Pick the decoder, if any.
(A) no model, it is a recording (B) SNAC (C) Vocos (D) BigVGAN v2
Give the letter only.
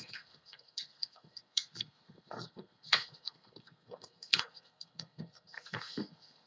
B